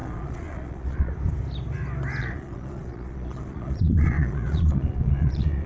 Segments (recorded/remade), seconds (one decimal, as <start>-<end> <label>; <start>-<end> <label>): 0.0-1.1 remade; 1.1-2.2 recorded; 2.2-5.7 remade